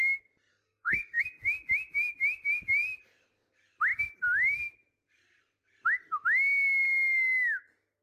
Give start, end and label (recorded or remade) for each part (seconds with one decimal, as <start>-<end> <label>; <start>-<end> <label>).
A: 0.0-0.5 recorded; 0.5-1.2 remade; 1.2-8.0 recorded